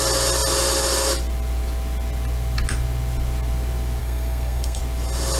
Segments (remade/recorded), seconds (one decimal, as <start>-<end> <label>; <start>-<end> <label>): 0.0-4.0 recorded; 4.0-4.8 remade; 4.8-5.4 recorded